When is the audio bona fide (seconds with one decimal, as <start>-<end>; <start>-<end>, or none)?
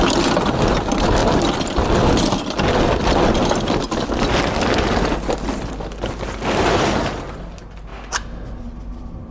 0.0-9.3